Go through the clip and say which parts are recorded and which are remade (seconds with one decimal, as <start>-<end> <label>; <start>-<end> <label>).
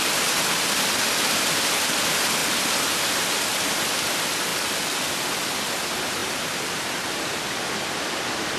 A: 0.0-8.6 recorded